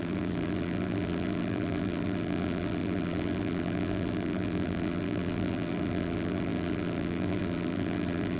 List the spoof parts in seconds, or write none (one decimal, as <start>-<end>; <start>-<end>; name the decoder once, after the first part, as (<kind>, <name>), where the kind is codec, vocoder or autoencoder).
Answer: 0.0-8.4 (vocoder, BigVGAN v2)